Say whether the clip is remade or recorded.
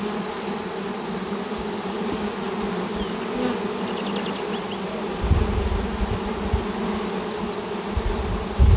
recorded